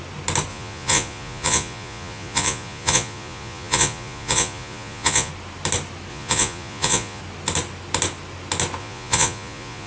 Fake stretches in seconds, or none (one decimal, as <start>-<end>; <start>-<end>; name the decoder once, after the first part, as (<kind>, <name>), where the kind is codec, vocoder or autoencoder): 0.5-5.3 (vocoder, Vocos); 6.1-7.2; 8.8-9.9